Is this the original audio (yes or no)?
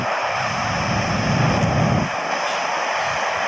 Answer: yes